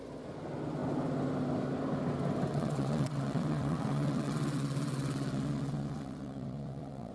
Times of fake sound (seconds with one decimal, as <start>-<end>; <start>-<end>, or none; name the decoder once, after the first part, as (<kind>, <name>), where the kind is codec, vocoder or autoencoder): 2.5-7.1 (vocoder, WaveNeXt)

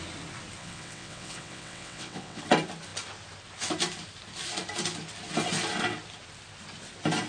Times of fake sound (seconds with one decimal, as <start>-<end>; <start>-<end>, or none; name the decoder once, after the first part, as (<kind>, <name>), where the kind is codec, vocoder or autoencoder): 0.6-2.4 (vocoder, WaveNeXt)

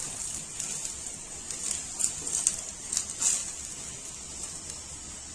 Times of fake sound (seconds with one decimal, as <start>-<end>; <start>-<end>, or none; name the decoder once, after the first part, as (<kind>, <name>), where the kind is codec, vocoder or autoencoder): none

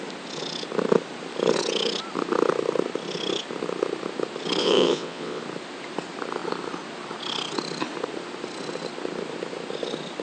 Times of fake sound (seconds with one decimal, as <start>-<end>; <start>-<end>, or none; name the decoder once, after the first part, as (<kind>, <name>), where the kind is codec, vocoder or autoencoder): 4.6-5.4 (vocoder, WaveNeXt)

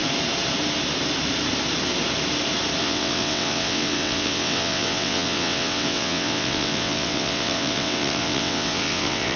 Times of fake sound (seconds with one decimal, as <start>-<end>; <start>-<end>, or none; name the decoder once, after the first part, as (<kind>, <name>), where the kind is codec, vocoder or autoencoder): 2.8-9.4 (vocoder, WaveNeXt)